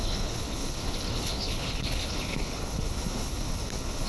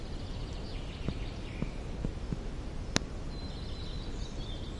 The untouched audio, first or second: second